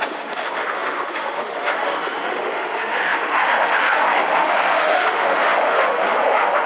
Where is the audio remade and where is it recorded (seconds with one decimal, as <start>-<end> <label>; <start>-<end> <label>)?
0.0-6.7 remade